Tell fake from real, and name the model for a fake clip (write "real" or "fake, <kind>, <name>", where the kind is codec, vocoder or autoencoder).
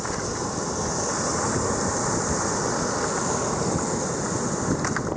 real